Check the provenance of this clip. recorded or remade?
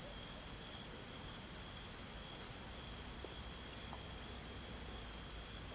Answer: recorded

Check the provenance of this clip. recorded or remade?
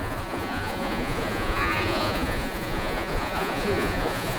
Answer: remade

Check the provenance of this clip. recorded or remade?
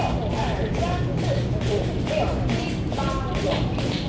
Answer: recorded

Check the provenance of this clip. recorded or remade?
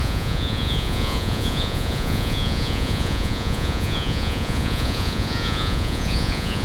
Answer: remade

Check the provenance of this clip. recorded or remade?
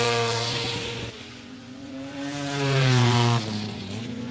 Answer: remade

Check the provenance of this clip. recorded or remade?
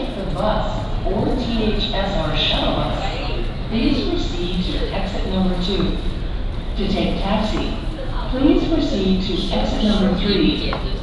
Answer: recorded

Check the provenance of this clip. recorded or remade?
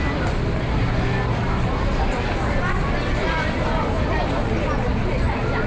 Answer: recorded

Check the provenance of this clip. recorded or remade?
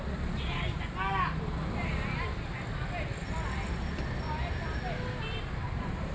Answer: recorded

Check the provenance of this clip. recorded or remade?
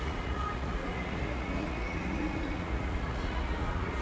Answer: remade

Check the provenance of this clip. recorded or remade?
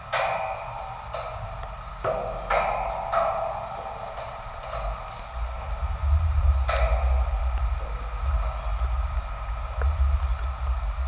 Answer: recorded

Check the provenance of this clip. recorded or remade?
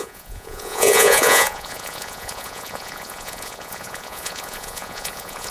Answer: remade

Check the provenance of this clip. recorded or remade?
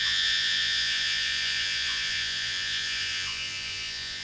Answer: remade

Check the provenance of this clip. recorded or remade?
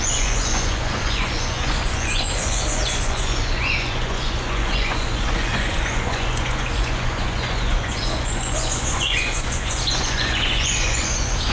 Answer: remade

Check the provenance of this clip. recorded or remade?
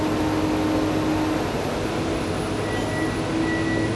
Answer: recorded